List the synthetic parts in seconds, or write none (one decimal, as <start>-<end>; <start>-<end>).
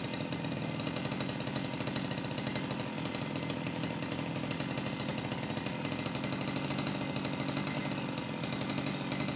none